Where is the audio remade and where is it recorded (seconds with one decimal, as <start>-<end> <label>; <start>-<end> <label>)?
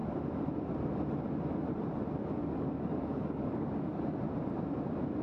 0.0-2.4 recorded; 2.4-4.2 remade; 4.2-5.2 recorded